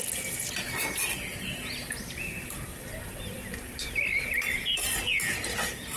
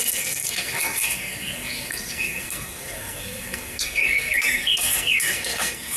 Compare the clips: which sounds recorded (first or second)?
first